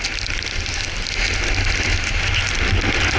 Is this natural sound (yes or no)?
yes